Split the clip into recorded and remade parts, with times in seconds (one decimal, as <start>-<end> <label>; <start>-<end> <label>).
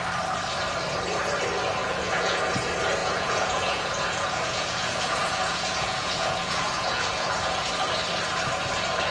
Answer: 0.0-1.8 recorded; 1.8-2.4 remade; 2.4-3.0 recorded; 3.0-7.7 remade; 7.7-9.1 recorded